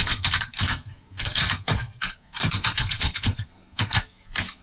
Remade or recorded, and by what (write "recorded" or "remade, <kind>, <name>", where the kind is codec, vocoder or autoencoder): remade, codec, SNAC